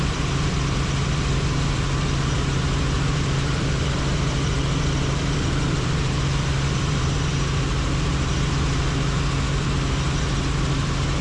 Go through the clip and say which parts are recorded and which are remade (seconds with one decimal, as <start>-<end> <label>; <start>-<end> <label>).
0.0-7.3 remade; 7.3-11.2 recorded